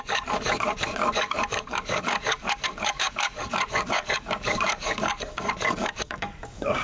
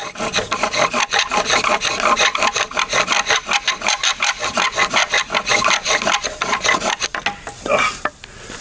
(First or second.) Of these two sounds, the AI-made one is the first